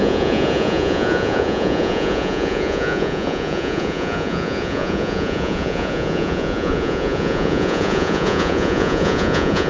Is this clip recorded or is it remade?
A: remade